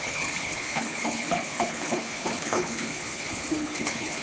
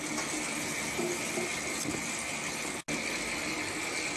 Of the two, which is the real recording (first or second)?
second